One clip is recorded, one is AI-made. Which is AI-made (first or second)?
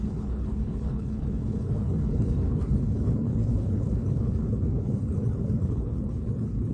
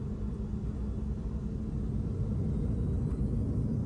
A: first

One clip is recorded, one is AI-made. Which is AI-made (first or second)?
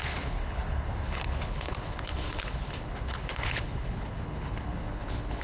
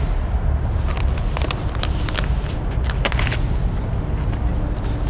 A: first